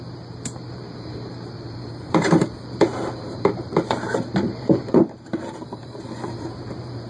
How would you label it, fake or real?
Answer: fake